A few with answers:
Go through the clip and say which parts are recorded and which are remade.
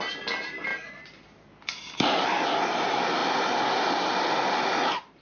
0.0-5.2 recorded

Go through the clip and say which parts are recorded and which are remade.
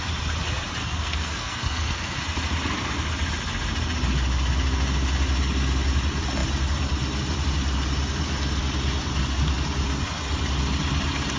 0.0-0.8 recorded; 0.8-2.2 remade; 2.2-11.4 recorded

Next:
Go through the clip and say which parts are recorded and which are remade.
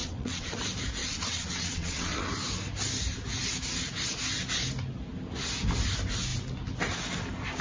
0.0-0.6 remade; 0.6-1.0 recorded; 1.0-2.3 remade; 2.3-7.6 recorded